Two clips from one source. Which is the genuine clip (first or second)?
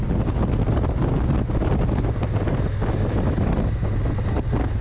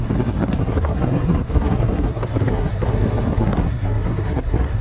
first